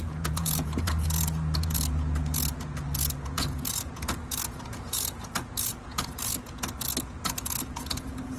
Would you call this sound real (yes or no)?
no